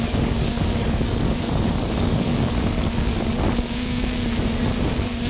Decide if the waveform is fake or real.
fake